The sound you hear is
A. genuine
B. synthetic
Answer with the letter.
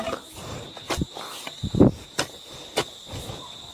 A